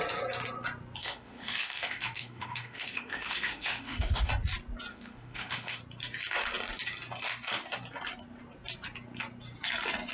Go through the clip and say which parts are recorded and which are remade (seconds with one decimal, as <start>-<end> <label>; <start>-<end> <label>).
0.0-1.0 recorded; 1.0-4.3 remade; 4.3-4.9 recorded; 4.9-5.8 remade; 5.8-10.1 recorded